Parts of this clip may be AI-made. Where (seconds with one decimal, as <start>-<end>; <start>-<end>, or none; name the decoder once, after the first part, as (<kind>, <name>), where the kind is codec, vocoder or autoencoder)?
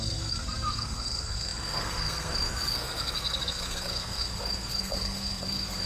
0.0-5.9 (codec, SNAC)